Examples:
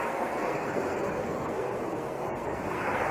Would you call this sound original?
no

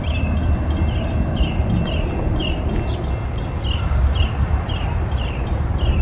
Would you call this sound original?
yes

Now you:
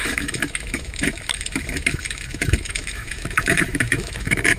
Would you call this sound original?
no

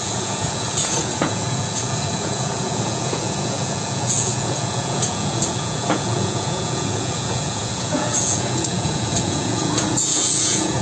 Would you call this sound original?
no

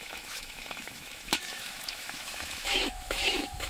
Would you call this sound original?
no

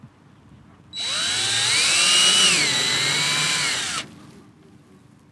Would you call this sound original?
yes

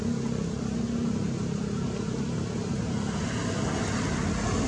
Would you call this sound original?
yes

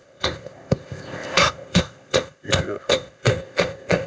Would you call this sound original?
no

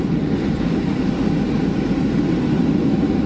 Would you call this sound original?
yes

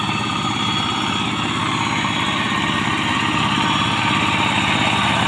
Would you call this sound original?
yes